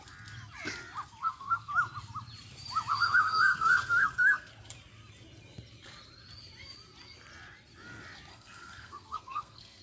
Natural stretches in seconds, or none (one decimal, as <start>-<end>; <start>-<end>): 0.0-1.2; 1.7-2.9; 4.5-8.3